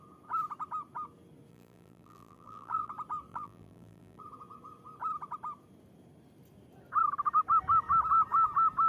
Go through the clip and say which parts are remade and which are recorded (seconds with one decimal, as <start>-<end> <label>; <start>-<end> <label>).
0.0-1.5 recorded; 1.5-2.9 remade; 2.9-3.3 recorded; 3.3-4.2 remade; 4.2-8.9 recorded